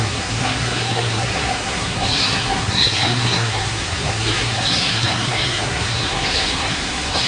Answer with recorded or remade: remade